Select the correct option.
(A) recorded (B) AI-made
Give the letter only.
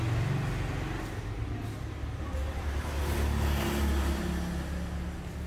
A